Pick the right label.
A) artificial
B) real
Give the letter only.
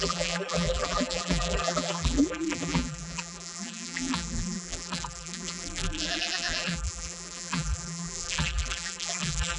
A